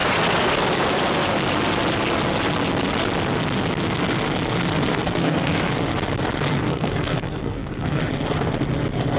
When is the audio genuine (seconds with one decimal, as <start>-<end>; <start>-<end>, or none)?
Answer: 0.0-4.9; 5.7-6.7; 8.0-9.2